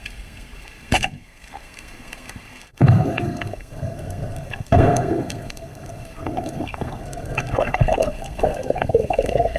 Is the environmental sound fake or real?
fake